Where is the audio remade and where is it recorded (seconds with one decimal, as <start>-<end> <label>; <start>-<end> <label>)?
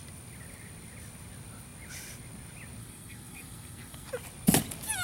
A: 0.0-2.8 recorded; 2.8-4.1 remade; 4.1-5.0 recorded